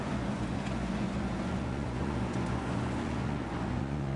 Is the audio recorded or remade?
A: remade